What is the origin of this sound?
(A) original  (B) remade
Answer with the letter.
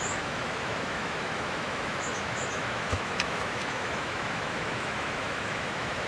B